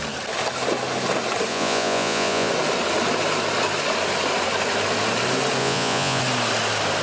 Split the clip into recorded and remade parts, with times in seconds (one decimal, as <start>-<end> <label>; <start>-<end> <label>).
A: 0.0-1.5 recorded; 1.5-2.5 remade; 2.5-5.6 recorded; 5.6-6.2 remade; 6.2-7.0 recorded